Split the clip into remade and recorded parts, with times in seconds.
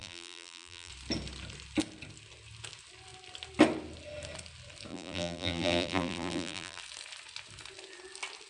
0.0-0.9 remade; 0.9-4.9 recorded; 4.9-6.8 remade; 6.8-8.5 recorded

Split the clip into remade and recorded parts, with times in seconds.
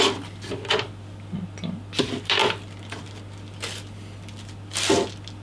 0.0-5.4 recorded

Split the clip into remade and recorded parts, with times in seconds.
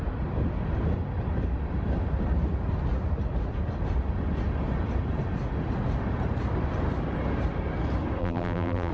0.0-8.2 recorded; 8.2-8.9 remade